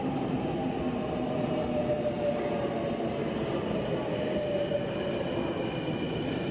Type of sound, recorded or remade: recorded